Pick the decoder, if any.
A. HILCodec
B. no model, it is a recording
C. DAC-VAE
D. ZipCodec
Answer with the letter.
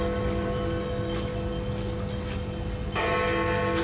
B